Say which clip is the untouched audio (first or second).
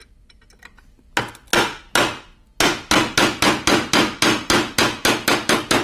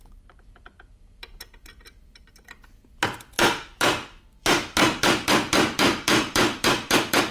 first